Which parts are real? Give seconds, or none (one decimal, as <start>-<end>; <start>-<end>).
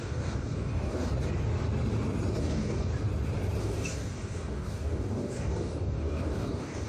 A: 1.1-2.4; 2.9-3.6